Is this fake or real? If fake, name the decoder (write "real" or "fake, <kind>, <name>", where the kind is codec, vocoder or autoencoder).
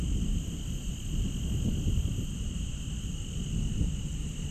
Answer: real